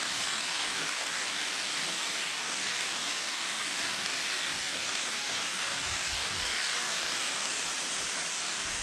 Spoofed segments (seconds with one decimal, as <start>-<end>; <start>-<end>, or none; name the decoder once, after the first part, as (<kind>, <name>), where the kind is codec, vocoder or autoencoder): 0.0-7.7 (codec, DAC); 8.3-8.8